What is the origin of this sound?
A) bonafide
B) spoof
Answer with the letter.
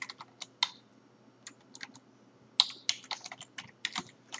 A